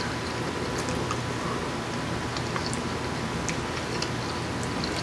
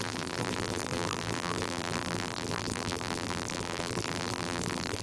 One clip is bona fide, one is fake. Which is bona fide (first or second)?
first